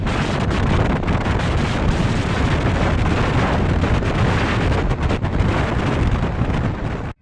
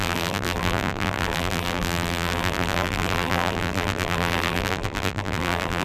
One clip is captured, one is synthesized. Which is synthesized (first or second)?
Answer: second